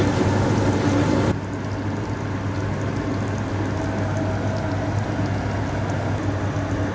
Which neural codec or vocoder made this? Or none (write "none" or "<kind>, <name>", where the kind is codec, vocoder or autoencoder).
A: none